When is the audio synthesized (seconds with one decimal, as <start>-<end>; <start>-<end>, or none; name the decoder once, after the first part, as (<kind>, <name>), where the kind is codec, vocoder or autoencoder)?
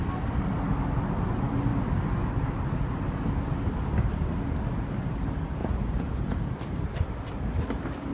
5.6-6.5 (vocoder, Vocos)